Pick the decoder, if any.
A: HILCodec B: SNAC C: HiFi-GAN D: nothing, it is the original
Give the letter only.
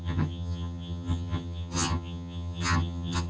C